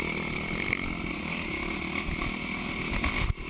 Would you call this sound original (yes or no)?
yes